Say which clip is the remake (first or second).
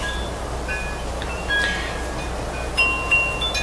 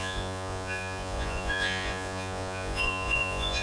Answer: second